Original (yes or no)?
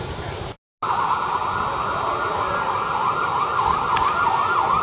yes